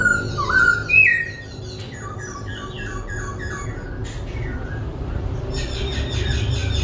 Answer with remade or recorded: recorded